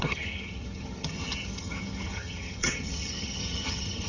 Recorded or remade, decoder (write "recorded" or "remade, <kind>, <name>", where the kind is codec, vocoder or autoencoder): remade, vocoder, HiFi-GAN